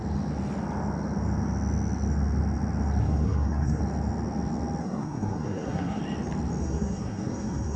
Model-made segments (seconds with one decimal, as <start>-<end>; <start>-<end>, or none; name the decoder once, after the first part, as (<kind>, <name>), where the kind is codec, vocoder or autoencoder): 3.0-3.8 (codec, SNAC); 4.8-6.0; 6.6-7.8